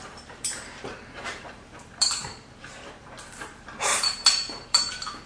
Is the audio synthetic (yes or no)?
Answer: yes